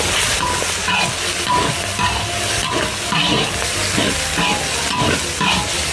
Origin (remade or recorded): recorded